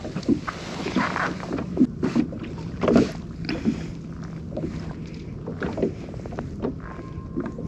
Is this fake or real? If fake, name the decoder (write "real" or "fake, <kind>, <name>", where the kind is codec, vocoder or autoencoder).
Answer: real